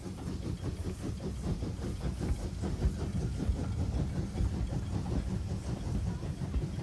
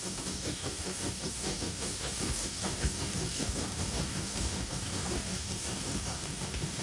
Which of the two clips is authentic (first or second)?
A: first